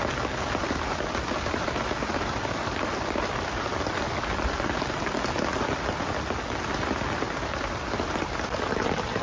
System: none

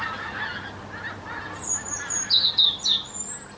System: none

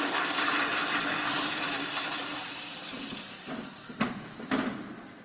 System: none